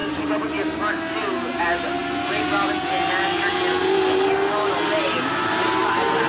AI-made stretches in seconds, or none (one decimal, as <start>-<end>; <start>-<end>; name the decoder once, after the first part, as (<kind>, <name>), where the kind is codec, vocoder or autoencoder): none